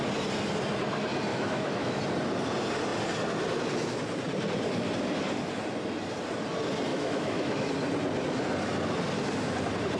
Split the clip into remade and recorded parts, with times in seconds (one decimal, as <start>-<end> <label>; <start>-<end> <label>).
0.0-1.3 recorded; 1.3-2.0 remade; 2.0-6.9 recorded; 6.9-7.7 remade; 7.7-10.0 recorded